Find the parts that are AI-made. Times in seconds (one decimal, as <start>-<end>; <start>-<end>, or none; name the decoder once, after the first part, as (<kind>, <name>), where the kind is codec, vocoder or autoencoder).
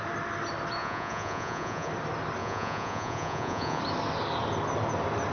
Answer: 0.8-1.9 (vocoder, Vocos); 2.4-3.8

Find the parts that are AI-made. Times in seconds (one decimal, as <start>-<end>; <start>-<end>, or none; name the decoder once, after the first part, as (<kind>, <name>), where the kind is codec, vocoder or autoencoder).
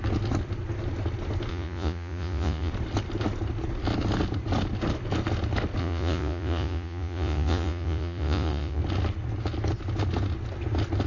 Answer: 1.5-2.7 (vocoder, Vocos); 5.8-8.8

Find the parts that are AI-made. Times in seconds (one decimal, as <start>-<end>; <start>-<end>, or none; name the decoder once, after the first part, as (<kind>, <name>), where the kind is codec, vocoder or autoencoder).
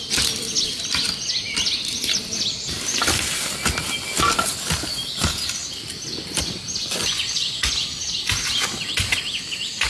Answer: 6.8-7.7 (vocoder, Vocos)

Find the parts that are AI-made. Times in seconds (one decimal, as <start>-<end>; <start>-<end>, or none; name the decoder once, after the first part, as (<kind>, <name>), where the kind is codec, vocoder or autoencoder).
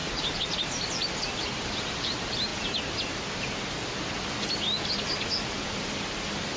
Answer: none